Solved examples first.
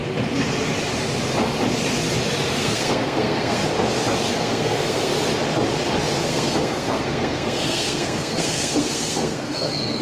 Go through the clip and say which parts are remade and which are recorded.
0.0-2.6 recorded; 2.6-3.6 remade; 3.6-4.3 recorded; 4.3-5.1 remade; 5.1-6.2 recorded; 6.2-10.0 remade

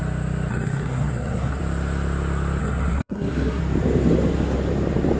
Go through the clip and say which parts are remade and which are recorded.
0.0-0.5 recorded; 0.5-1.6 remade; 1.6-2.6 recorded; 2.6-3.6 remade; 3.6-5.2 recorded